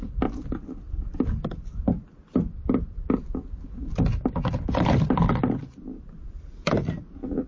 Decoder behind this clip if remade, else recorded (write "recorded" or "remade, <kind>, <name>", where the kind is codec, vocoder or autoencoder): recorded